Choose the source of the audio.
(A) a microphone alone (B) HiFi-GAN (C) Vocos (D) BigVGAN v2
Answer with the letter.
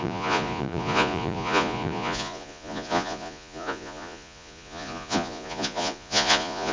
C